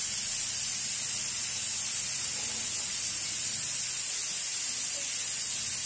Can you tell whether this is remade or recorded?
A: recorded